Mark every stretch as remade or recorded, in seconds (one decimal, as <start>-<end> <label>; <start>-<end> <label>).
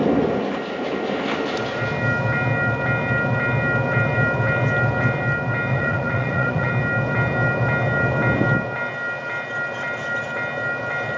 0.0-5.7 recorded; 5.7-6.7 remade; 6.7-11.2 recorded